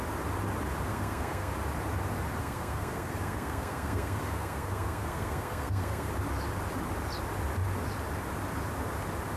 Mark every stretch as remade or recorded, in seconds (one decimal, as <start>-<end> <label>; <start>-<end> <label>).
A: 0.0-0.9 recorded; 0.9-1.5 remade; 1.5-2.4 recorded; 2.4-6.1 remade; 6.1-9.4 recorded